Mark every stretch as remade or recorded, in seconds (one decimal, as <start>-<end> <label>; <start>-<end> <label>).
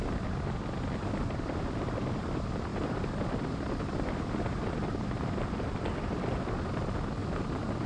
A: 0.0-2.7 recorded; 2.7-6.7 remade; 6.7-7.2 recorded; 7.2-7.9 remade